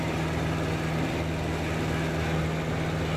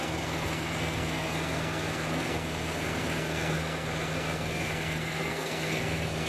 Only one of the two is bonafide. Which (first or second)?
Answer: first